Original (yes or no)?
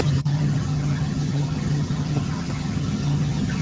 no